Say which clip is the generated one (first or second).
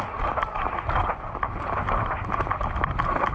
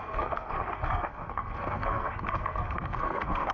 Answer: second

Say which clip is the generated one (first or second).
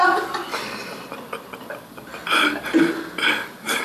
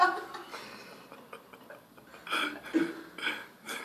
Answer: first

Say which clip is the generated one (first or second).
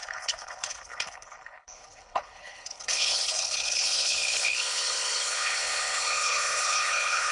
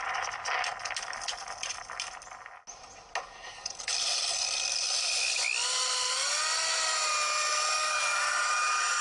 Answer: first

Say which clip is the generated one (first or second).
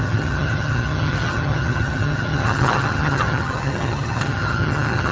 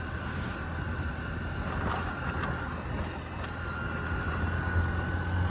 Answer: first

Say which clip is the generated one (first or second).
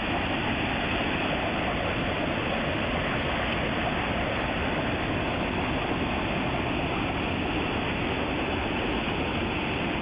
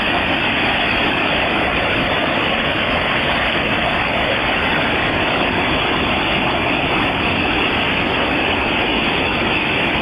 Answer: second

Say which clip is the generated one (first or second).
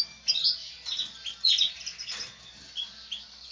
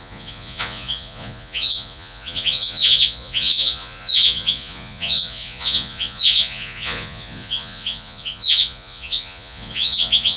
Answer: second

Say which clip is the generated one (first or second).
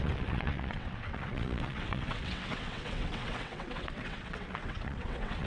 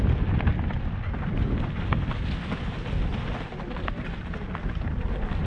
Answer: first